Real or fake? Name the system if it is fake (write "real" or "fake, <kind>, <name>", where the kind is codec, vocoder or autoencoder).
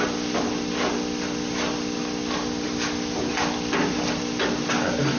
real